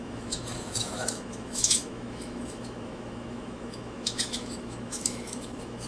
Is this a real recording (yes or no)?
no